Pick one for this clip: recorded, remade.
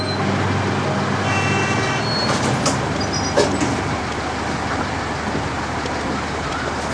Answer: recorded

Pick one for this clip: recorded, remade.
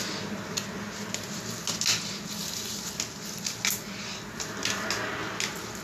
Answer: recorded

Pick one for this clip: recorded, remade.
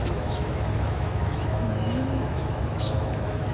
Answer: remade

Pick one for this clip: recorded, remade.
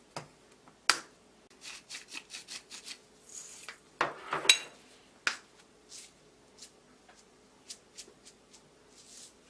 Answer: recorded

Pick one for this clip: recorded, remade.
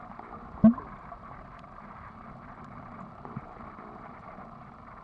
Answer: recorded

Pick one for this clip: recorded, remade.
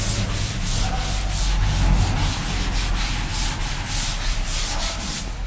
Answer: recorded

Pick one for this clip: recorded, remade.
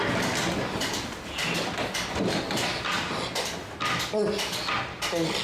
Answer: recorded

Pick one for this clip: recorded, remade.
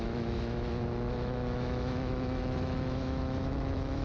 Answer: remade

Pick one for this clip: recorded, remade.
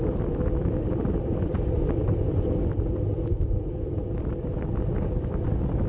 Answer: recorded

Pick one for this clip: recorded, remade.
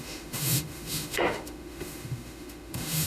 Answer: remade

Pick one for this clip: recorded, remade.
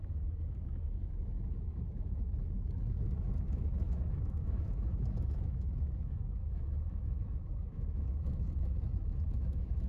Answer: remade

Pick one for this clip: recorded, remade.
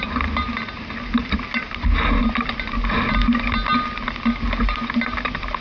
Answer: recorded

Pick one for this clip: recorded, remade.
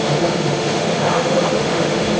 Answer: remade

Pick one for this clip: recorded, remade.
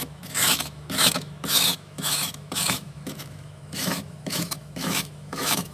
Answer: remade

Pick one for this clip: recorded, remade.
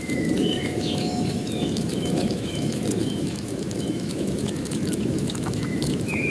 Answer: remade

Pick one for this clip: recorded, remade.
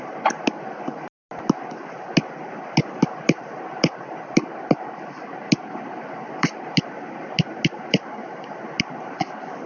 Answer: recorded